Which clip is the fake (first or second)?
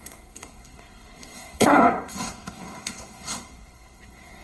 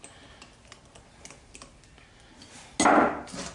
first